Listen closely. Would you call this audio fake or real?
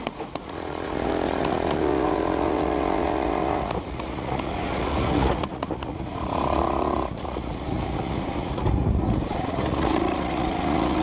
fake